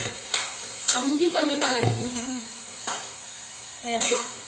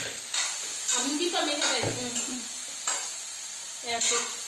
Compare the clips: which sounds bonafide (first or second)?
second